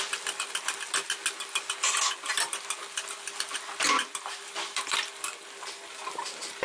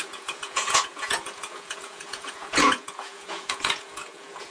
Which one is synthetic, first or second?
second